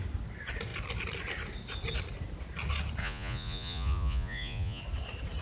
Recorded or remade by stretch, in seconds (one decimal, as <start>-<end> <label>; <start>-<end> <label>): 0.0-3.0 recorded; 3.0-4.8 remade; 4.8-5.4 recorded